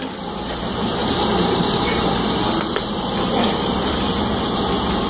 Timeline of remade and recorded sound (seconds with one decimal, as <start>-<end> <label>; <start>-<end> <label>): 0.0-1.0 recorded; 1.0-4.1 remade; 4.1-5.1 recorded